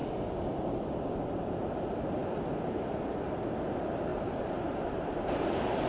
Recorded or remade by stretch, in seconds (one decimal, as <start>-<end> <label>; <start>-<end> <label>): 0.0-4.1 recorded; 4.1-5.9 remade